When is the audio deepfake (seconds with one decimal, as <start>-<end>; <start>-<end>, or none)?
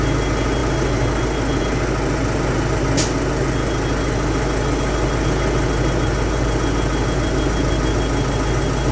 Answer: none